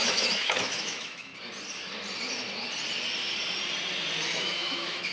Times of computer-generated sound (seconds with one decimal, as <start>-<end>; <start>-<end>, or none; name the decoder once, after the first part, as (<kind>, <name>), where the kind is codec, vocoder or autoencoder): 0.0-1.3 (autoencoder, DAC-VAE); 4.4-5.1